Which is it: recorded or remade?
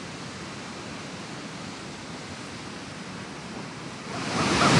recorded